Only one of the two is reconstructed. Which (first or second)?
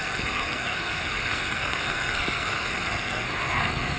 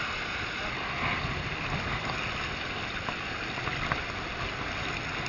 first